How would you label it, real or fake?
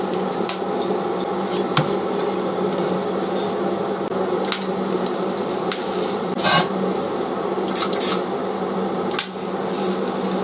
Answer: real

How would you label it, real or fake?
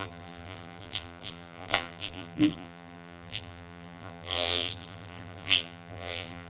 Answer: fake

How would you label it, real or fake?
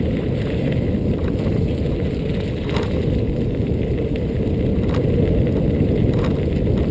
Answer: real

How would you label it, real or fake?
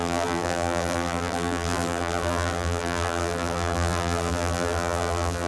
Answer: fake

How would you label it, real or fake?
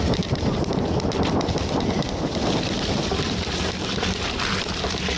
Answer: fake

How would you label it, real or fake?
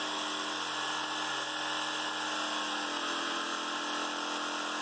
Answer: real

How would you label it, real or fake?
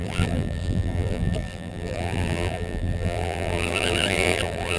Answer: fake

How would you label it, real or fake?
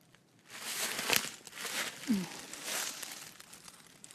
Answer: real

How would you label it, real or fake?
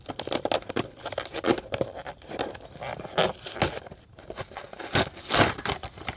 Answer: real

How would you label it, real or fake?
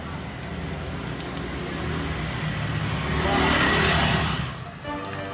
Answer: real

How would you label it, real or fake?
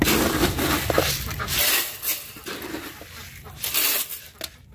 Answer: real